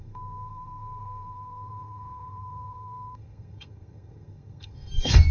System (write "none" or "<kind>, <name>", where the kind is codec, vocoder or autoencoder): codec, SNAC